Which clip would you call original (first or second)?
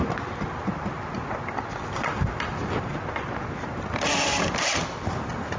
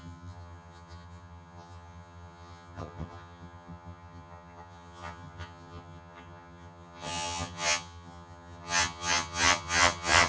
first